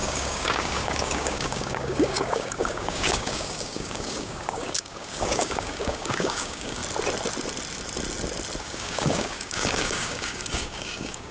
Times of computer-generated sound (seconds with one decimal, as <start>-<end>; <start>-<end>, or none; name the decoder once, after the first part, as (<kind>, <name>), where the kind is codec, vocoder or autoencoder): 0.0-6.8 (codec, DAC); 8.6-11.3